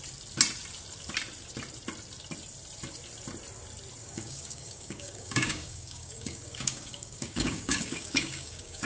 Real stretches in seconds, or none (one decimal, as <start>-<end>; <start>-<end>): 0.0-4.0